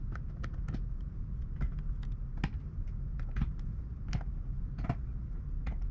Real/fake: real